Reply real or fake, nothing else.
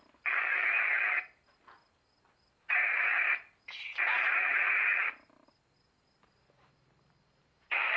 real